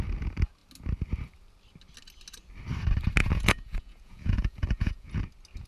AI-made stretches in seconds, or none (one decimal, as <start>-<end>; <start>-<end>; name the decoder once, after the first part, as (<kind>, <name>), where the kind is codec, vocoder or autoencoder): 3.2-5.2 (vocoder, Vocos)

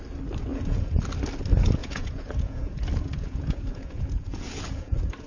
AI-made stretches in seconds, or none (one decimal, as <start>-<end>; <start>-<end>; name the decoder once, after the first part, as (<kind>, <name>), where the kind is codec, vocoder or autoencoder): 0.5-1.0 (vocoder, Vocos); 1.8-5.3

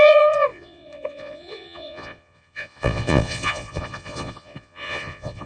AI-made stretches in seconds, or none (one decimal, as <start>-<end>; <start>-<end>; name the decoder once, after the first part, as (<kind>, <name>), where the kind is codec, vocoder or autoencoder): 0.0-5.5 (vocoder, Vocos)